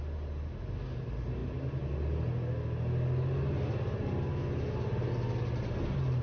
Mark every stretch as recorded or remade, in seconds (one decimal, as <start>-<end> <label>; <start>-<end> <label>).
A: 0.0-6.2 recorded